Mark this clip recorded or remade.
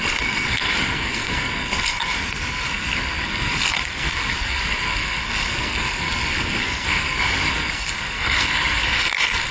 remade